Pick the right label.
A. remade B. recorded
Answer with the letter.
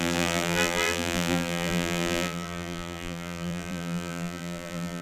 A